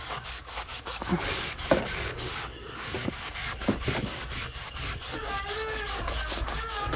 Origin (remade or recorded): remade